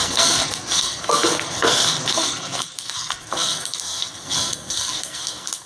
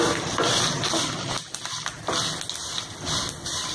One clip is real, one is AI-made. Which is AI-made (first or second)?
first